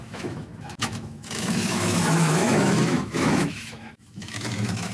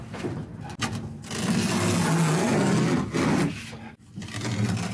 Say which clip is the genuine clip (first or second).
second